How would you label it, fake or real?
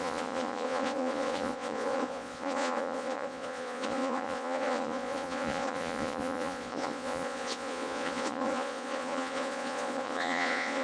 fake